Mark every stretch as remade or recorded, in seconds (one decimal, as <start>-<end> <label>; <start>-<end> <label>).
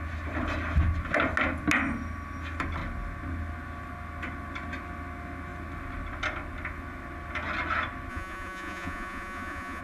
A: 0.0-8.1 recorded; 8.1-9.8 remade